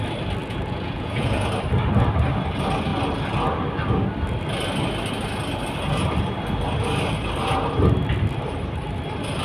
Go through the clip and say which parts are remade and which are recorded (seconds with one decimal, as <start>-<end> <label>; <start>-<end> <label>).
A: 0.0-0.4 recorded; 0.4-1.5 remade; 1.5-9.4 recorded